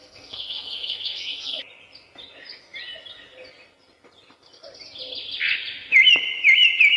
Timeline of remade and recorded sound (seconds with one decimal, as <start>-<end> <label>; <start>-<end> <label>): 0.0-1.6 remade; 1.6-7.0 recorded